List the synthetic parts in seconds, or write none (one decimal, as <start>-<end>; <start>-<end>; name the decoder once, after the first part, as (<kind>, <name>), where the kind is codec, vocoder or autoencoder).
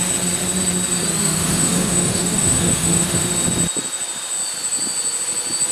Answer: 1.2-3.3 (autoencoder, DAC-VAE)